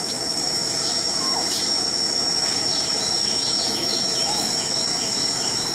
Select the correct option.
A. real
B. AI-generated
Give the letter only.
B